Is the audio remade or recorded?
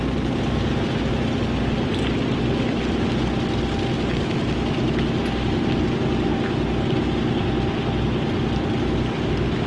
recorded